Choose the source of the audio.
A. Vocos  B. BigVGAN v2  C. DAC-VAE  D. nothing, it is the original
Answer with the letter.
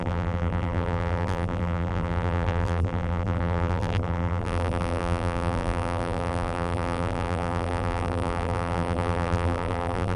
B